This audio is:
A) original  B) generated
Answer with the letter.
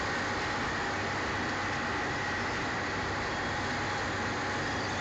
A